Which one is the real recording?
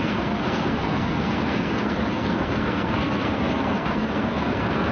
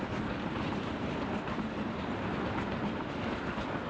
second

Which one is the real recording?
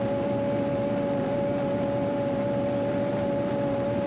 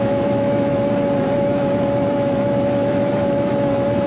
first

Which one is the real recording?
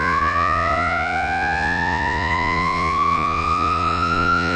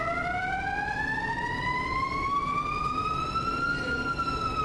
second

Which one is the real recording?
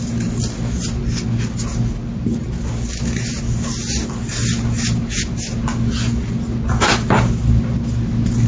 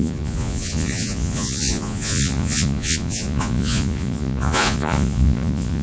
first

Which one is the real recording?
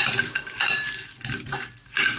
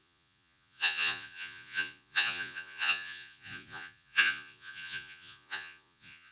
first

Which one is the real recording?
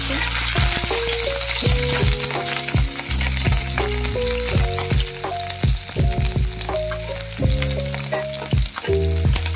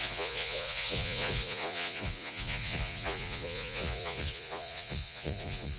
first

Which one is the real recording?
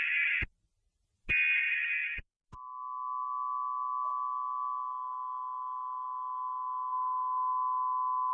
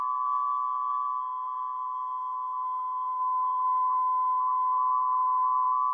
first